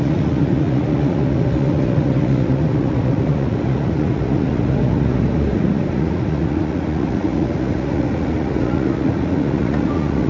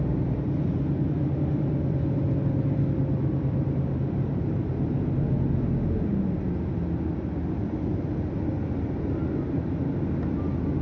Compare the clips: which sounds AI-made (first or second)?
first